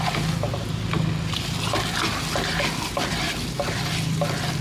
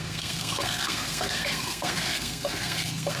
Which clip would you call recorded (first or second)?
first